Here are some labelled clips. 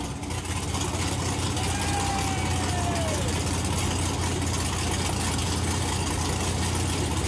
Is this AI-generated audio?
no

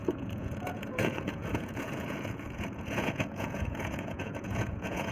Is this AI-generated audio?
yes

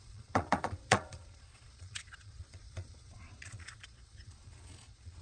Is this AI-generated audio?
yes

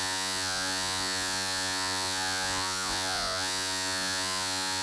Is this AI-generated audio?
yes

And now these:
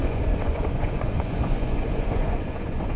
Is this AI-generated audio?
yes